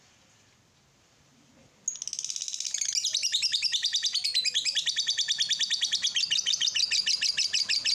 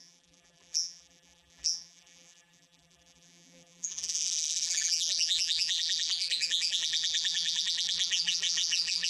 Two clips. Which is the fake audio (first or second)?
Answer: second